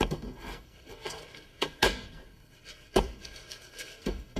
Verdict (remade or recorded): remade